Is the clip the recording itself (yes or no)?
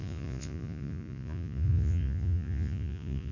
no